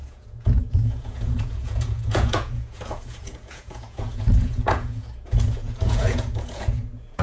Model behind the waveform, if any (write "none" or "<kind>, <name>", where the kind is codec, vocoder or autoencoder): vocoder, Vocos